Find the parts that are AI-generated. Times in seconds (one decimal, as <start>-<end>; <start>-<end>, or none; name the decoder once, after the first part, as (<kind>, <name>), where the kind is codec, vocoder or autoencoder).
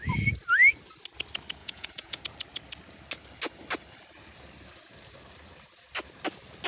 1.6-2.2 (vocoder, Vocos)